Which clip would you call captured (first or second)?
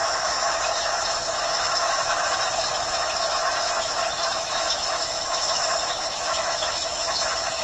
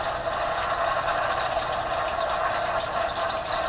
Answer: second